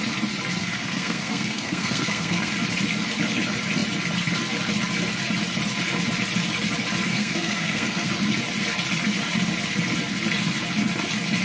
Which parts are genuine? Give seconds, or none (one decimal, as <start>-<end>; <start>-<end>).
0.0-0.6; 2.5-7.1; 8.1-11.4